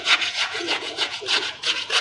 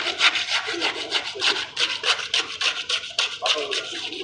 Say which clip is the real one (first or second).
second